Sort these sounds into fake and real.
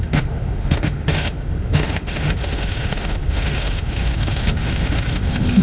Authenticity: fake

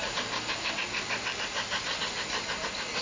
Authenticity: real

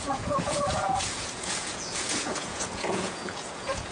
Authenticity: fake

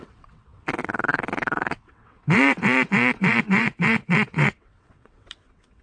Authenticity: fake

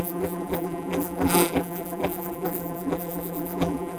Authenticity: fake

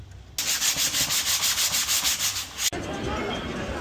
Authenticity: real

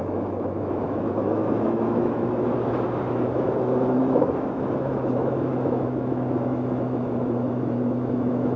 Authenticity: fake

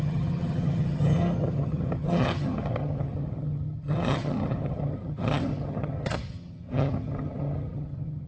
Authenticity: fake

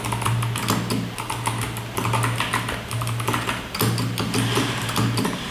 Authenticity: real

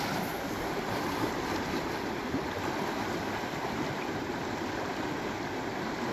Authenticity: real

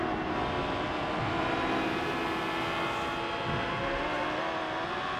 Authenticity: real